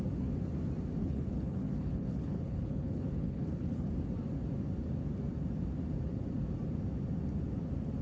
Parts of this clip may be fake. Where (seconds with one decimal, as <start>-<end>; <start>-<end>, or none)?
1.0-3.9